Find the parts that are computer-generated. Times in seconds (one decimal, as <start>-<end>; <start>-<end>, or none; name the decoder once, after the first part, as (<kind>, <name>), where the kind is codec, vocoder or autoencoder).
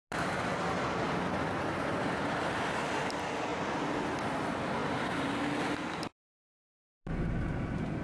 none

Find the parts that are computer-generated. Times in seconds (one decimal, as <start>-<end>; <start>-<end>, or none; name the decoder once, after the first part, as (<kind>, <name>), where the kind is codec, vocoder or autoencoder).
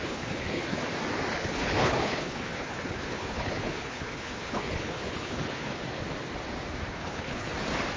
0.0-0.8 (codec, HILCodec); 1.3-5.8; 6.9-7.5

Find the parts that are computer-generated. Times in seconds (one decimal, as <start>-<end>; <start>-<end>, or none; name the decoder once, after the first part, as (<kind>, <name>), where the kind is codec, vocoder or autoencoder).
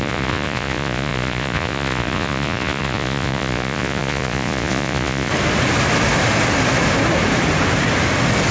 0.0-5.3 (vocoder, Vocos)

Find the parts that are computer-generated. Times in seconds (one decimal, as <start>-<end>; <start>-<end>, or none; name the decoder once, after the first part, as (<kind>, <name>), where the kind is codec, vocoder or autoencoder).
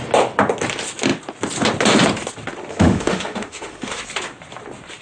2.7-4.0 (autoencoder, DAC-VAE)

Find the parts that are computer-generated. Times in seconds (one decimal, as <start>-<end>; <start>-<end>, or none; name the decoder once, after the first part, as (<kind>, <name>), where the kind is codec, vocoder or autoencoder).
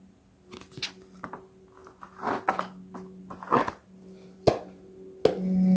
none